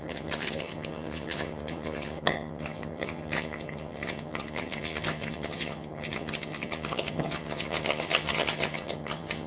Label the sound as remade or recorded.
remade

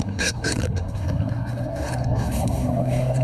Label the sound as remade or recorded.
remade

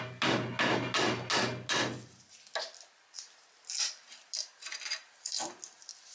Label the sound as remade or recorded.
recorded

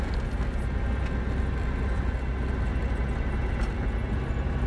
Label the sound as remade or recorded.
recorded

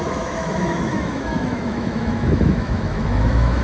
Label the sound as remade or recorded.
remade